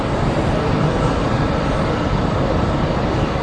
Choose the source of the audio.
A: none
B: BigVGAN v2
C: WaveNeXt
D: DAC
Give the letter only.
B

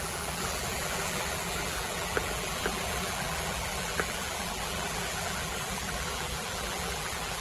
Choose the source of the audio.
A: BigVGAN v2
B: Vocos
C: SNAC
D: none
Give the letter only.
A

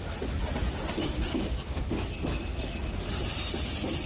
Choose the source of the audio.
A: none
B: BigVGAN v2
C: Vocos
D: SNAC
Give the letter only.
A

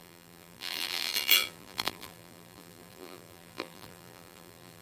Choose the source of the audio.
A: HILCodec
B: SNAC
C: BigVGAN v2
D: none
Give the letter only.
C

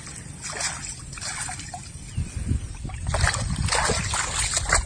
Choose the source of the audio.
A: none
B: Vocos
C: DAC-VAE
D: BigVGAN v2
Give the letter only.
A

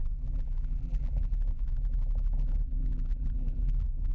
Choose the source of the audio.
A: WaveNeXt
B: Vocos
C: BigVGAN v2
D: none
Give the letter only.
C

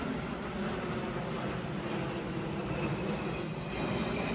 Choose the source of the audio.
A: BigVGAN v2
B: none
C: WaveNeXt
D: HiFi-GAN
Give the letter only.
B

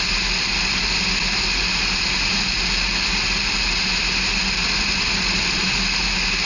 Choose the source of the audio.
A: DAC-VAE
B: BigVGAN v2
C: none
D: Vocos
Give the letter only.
C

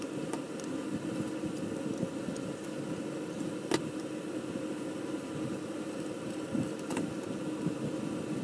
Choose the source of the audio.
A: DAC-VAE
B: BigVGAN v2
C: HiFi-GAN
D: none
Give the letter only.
D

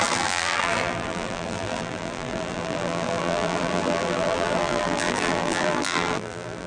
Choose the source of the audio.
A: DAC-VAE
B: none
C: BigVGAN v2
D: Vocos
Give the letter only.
C